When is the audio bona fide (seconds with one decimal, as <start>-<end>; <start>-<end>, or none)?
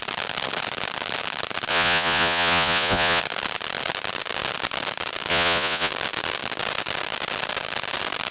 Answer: 0.0-1.7; 3.2-5.3; 5.9-8.3